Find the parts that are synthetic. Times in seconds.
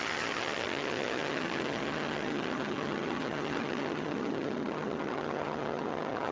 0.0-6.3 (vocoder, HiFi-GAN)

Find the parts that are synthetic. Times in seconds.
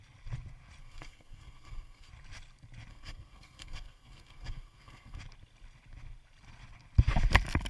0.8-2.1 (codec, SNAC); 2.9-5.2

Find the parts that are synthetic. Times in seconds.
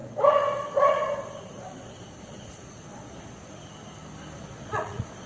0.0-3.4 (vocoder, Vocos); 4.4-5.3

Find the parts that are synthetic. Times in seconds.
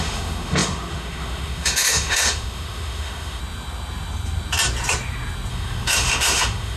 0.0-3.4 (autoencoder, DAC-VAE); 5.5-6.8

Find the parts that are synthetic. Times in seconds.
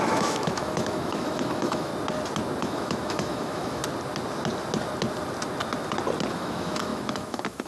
0.0-1.9 (autoencoder, DAC-VAE); 2.6-3.8; 6.3-7.7